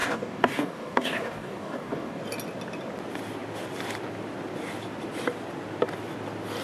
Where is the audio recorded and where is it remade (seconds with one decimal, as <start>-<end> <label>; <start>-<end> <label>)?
0.0-2.2 remade; 2.2-6.6 recorded

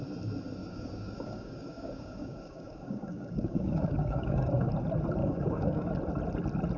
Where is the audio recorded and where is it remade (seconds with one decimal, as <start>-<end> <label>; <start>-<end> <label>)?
0.0-0.6 recorded; 0.6-4.7 remade; 4.7-5.2 recorded; 5.2-5.9 remade; 5.9-6.8 recorded